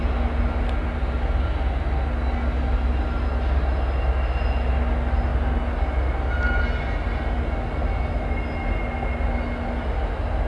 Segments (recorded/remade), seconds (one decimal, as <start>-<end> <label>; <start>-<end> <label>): 0.0-10.5 recorded